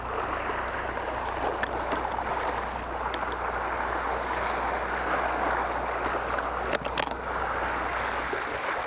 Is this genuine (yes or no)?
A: yes